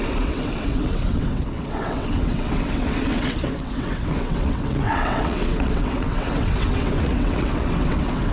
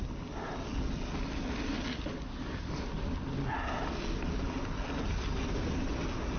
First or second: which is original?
second